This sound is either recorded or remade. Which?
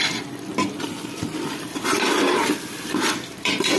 remade